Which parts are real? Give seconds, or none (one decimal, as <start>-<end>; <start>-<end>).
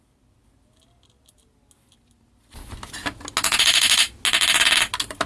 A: 0.0-5.3